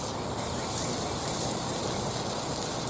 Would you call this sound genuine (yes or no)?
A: yes